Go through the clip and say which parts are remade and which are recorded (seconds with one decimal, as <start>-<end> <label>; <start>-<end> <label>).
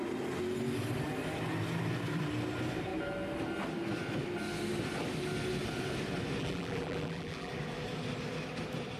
0.0-6.4 recorded; 6.4-7.5 remade; 7.5-9.0 recorded